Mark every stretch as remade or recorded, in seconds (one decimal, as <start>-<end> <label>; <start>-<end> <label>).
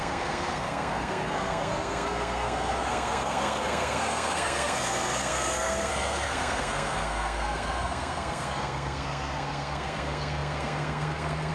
0.0-11.5 remade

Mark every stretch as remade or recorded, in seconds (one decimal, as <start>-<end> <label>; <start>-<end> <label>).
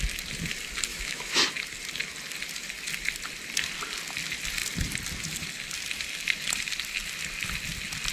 0.0-0.9 recorded; 0.9-1.4 remade; 1.4-8.1 recorded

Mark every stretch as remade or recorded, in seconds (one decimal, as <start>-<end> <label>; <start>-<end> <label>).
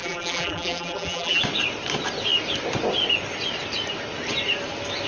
0.0-1.4 remade; 1.4-5.1 recorded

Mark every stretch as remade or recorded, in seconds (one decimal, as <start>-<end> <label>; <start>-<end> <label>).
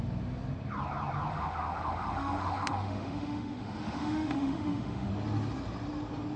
0.0-1.3 recorded; 1.3-5.1 remade; 5.1-6.4 recorded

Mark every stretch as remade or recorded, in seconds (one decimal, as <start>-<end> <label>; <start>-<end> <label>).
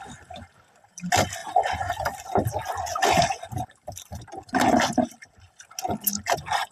0.0-6.7 recorded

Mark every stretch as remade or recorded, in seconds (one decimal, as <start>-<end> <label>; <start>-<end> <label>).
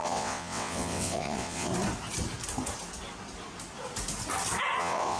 0.0-1.7 remade; 1.7-4.8 recorded; 4.8-5.2 remade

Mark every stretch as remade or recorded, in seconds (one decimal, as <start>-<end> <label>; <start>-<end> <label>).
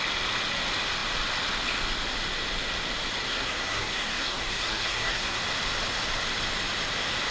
0.0-3.3 recorded; 3.3-5.4 remade; 5.4-7.3 recorded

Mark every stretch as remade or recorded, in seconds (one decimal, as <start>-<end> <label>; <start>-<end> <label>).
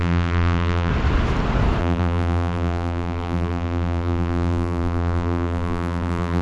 0.0-0.9 remade; 0.9-1.8 recorded; 1.8-6.4 remade